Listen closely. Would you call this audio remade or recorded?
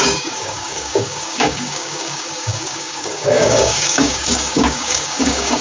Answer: remade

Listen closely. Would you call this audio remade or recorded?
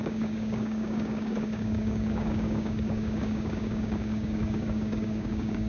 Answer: remade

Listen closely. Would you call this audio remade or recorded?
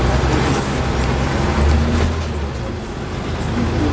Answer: recorded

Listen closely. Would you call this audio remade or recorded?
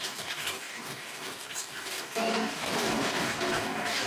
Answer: remade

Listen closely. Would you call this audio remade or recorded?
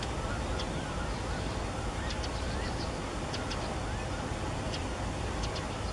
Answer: recorded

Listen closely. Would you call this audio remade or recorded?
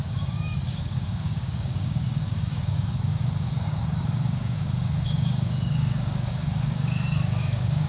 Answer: remade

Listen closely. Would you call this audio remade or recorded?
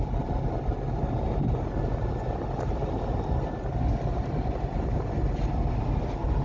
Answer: recorded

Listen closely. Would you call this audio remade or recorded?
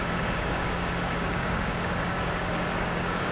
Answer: remade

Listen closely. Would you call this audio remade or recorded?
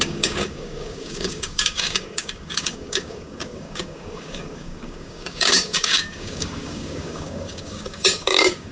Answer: remade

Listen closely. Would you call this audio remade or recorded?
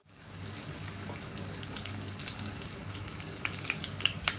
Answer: remade